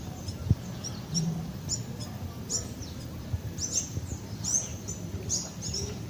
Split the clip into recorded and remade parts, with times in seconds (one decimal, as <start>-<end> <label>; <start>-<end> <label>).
0.0-0.4 remade; 0.4-3.3 recorded; 3.3-6.1 remade